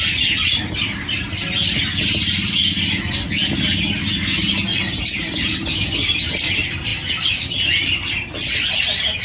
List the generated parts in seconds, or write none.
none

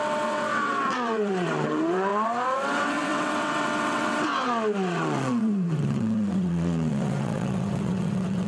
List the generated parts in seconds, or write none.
0.0-8.5 (vocoder, WaveNeXt)